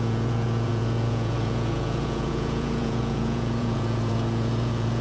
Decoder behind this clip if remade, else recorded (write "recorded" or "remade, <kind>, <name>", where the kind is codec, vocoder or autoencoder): remade, vocoder, Vocos